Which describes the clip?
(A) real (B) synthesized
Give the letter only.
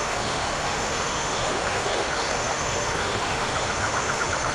B